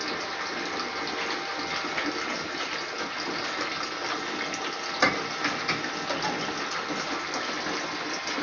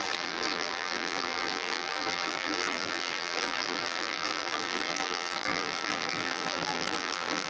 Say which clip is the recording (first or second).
first